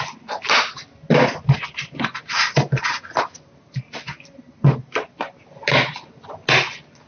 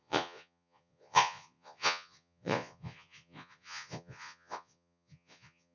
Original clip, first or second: first